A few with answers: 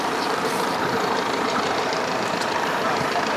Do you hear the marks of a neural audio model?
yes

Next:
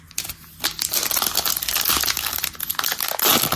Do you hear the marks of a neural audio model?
no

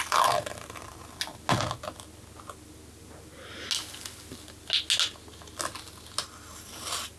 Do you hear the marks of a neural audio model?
no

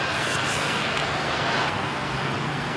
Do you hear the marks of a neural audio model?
yes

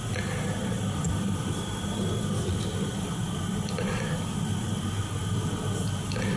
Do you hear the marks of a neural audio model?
no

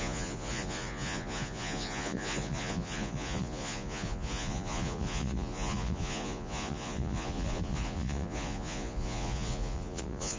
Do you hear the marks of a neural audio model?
yes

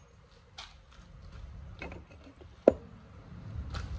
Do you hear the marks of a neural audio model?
no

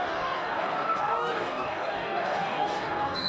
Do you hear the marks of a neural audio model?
yes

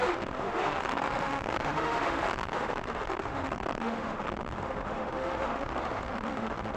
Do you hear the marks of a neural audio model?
yes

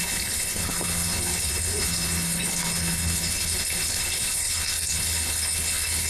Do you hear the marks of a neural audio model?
yes